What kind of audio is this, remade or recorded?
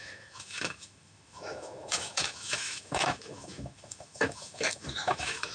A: remade